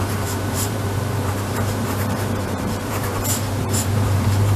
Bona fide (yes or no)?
no